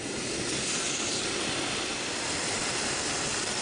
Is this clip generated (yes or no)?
no